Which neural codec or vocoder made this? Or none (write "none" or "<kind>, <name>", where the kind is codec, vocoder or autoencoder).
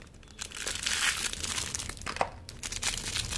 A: none